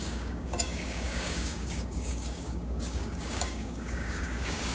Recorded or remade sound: remade